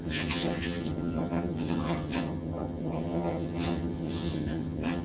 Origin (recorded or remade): remade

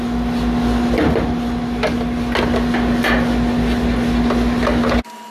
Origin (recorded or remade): recorded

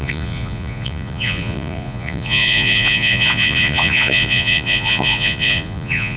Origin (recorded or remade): remade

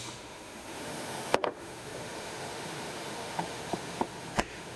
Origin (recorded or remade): remade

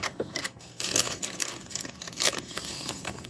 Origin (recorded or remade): remade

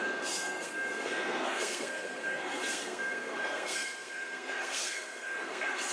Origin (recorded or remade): remade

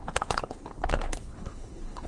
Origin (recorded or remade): remade